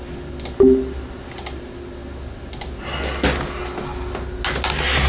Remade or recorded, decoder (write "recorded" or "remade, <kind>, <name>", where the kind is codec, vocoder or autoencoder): recorded